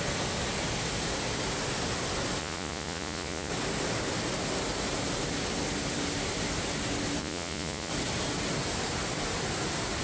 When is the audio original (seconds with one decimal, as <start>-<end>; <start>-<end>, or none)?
0.0-2.4; 3.5-7.2; 7.9-10.0